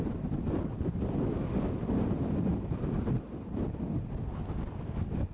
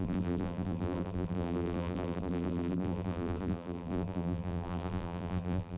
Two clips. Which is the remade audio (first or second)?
second